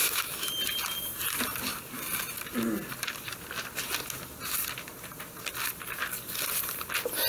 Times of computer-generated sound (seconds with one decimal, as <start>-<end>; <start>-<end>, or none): 0.0-0.5